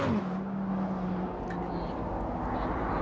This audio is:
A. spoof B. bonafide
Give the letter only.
B